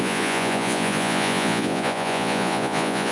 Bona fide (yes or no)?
no